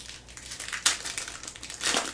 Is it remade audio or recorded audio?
remade